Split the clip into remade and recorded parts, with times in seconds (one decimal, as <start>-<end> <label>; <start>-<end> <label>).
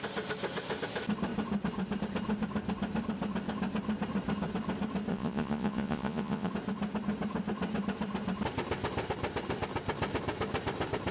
0.0-5.1 recorded; 5.1-6.5 remade; 6.5-11.1 recorded